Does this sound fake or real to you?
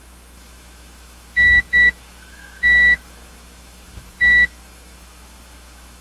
fake